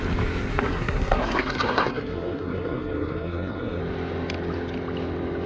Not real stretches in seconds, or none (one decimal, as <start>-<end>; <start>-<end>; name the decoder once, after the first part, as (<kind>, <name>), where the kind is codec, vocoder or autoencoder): 0.5-3.8 (codec, SNAC)